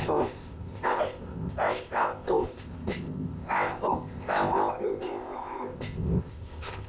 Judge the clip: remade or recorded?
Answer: remade